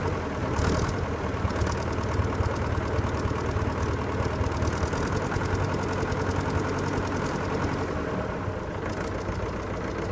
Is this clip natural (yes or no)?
yes